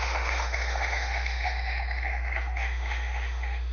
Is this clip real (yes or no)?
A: no